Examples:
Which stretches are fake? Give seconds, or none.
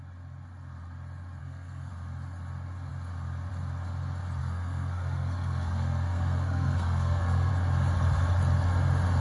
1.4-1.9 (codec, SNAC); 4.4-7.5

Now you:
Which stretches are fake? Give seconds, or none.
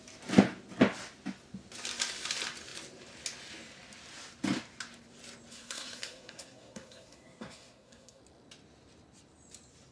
5.5-8.2 (codec, SNAC)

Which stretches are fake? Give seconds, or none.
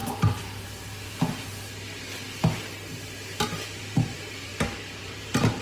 3.4-4.5 (vocoder, BigVGAN v2); 5.0-5.6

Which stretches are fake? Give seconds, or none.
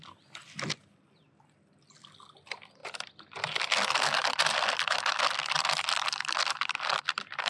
none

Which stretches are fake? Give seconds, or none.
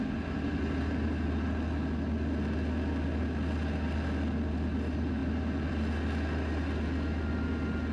none